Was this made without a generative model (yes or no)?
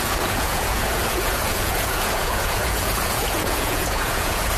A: no